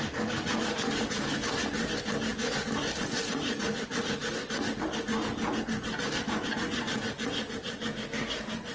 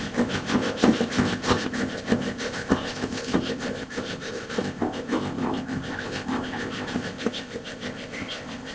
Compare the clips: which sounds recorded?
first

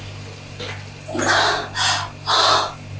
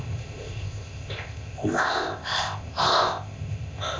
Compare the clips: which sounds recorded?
first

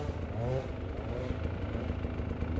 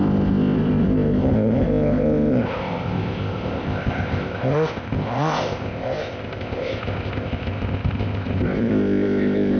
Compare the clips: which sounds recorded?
first